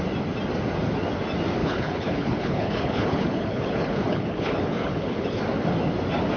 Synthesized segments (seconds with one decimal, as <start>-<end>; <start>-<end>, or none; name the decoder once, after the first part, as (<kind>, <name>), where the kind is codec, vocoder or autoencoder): 1.6-5.4 (codec, HILCodec)

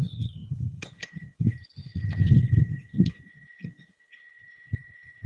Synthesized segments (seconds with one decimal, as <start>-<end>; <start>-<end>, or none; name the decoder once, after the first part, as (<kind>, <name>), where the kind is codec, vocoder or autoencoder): 0.0-5.3 (codec, HILCodec)

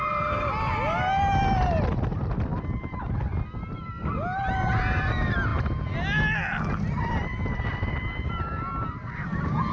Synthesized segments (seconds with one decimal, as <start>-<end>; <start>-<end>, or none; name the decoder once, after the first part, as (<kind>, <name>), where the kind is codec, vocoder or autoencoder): none

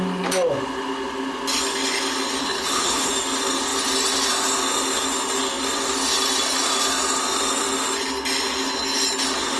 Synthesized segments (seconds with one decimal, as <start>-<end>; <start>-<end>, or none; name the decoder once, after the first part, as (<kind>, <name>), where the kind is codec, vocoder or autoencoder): 2.4-3.1 (codec, HILCodec)

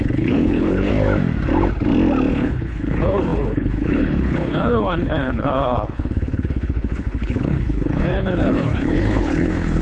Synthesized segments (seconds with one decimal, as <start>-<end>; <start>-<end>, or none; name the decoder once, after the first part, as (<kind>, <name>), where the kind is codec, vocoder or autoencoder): 0.0-0.9 (codec, HILCodec); 2.3-9.8